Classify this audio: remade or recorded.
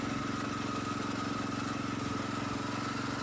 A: recorded